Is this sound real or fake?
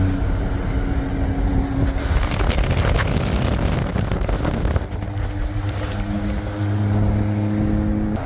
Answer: real